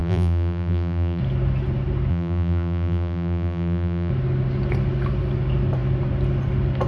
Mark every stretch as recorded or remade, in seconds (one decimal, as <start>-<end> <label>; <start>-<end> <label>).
0.0-1.2 remade; 1.2-2.1 recorded; 2.1-4.1 remade; 4.1-6.9 recorded